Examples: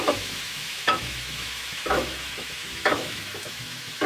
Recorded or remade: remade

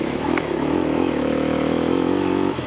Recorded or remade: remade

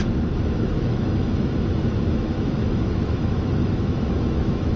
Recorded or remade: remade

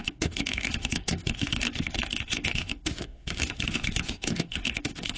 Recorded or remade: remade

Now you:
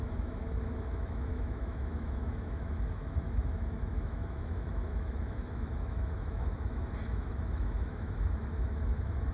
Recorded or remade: remade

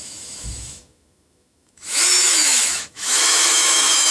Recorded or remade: remade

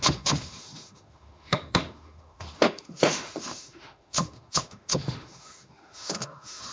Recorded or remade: remade